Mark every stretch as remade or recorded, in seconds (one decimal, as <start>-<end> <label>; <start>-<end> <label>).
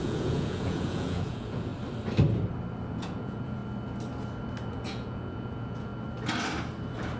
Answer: 0.0-1.7 remade; 1.7-2.8 recorded; 2.8-3.6 remade; 3.6-4.7 recorded; 4.7-5.9 remade; 5.9-7.2 recorded